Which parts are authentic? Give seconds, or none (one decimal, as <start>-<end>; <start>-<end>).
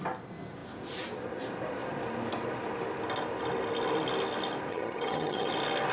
0.0-4.7; 5.5-5.9